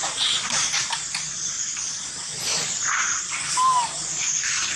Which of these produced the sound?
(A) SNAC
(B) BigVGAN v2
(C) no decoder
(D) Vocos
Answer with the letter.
C